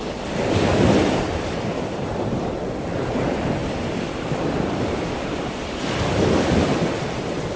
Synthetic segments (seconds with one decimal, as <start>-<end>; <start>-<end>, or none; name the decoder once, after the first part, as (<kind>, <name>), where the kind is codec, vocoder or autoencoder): 0.7-2.6 (vocoder, BigVGAN v2); 3.6-6.7